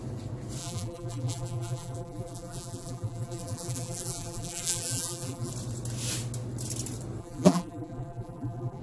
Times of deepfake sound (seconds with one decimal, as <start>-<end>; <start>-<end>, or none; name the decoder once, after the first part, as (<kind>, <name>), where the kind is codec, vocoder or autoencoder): 0.6-5.5 (vocoder, BigVGAN v2); 7.2-8.8